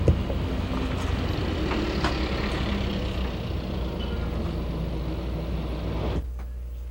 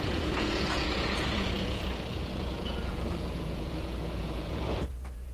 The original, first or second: first